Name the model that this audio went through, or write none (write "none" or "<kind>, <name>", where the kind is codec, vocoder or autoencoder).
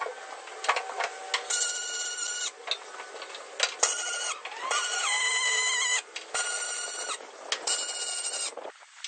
none